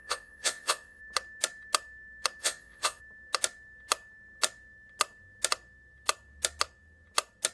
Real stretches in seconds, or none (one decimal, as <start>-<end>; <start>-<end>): 1.0-2.4; 3.0-7.5